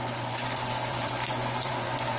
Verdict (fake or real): fake